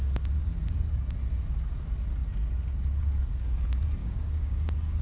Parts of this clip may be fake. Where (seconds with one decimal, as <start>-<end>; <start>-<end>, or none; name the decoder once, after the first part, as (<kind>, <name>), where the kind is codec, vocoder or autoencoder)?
4.0-4.6 (codec, DAC)